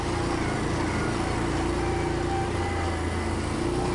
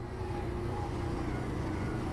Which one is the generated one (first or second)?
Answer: second